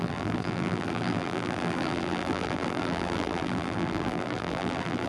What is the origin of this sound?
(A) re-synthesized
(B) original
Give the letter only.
A